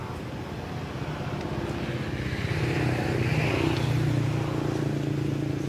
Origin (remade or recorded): recorded